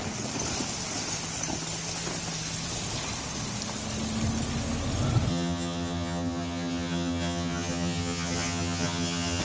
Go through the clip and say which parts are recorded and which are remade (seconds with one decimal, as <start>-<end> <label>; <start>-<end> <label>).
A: 0.0-5.3 recorded; 5.3-9.4 remade